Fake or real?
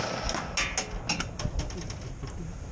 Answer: real